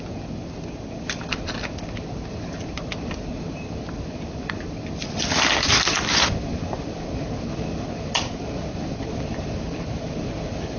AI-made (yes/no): no